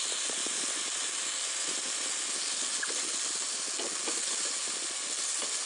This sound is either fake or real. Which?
real